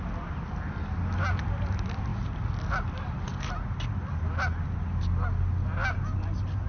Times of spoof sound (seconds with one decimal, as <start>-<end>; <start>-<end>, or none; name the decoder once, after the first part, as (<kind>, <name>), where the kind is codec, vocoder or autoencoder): none